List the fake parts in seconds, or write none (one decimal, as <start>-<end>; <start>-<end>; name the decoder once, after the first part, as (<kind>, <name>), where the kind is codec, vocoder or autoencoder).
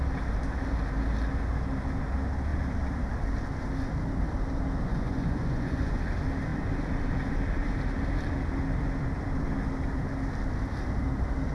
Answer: 4.8-6.0 (vocoder, Vocos)